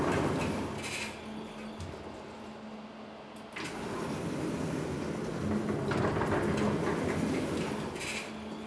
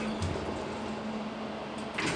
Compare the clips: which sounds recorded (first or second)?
first